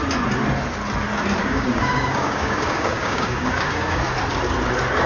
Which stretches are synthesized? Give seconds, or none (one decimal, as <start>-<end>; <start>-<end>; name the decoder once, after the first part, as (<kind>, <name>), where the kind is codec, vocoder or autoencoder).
1.4-4.0 (codec, DAC)